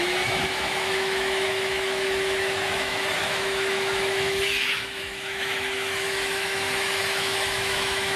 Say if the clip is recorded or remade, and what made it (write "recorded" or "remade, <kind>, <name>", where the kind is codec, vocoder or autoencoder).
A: remade, autoencoder, DAC-VAE